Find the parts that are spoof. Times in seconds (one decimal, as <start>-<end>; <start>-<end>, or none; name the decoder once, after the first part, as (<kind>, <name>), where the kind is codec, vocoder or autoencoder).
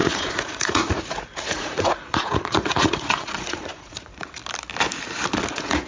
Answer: 0.0-4.4 (vocoder, Vocos); 5.5-5.9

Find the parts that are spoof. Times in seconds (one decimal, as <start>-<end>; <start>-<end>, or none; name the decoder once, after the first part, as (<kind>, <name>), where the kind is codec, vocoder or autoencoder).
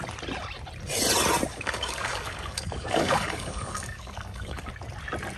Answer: 1.5-4.7 (codec, DAC)